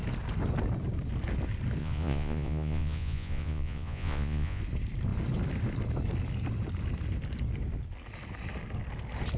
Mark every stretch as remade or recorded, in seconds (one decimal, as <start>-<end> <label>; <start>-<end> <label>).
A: 0.0-1.8 recorded; 1.8-4.6 remade; 4.6-9.4 recorded